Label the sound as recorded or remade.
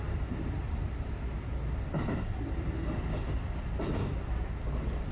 recorded